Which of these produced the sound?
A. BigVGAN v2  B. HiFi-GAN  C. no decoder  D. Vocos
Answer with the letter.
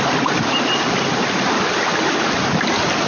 C